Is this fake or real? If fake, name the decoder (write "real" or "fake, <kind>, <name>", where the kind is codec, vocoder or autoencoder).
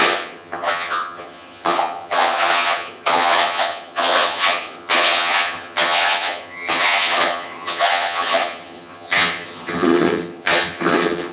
fake, vocoder, HiFi-GAN